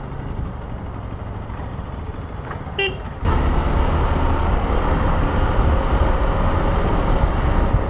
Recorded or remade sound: recorded